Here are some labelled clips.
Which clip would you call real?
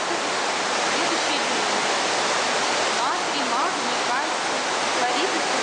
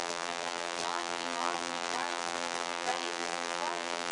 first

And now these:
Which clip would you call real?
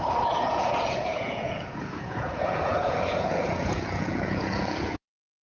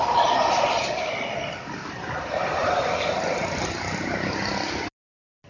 second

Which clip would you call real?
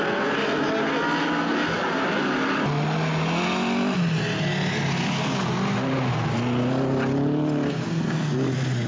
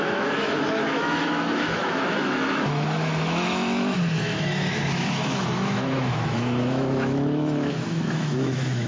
first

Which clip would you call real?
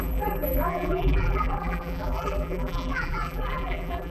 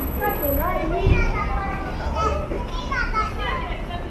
second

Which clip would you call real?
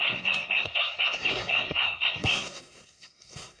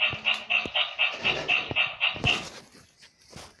second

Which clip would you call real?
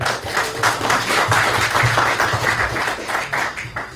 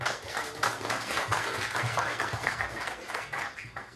first